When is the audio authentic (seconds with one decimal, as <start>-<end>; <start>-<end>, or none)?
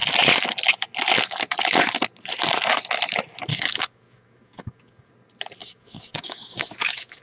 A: 0.0-3.5; 5.1-5.6